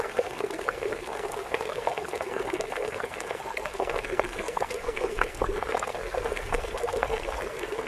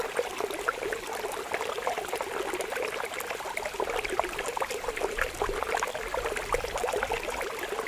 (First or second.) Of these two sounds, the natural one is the second